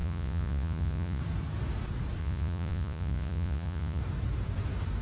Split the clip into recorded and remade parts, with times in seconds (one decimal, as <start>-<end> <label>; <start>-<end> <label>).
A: 0.0-1.2 remade; 1.2-2.2 recorded; 2.2-4.0 remade; 4.0-5.0 recorded